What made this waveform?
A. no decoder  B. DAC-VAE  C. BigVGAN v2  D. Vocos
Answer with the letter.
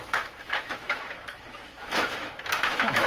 B